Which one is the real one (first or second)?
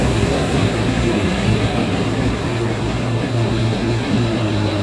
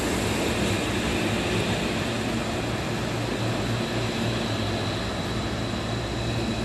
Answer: second